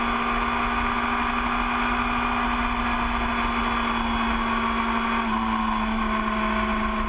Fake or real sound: real